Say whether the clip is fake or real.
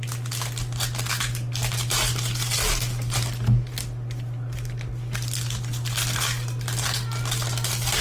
real